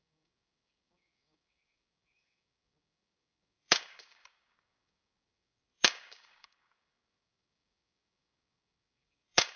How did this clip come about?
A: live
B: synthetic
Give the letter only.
B